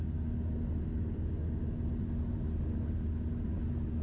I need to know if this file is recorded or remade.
recorded